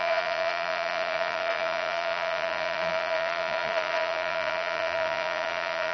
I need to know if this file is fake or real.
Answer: fake